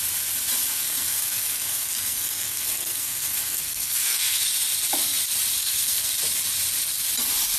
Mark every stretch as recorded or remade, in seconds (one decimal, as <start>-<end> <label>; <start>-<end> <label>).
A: 0.0-0.7 recorded; 0.7-4.5 remade; 4.5-5.6 recorded; 5.6-6.1 remade; 6.1-7.6 recorded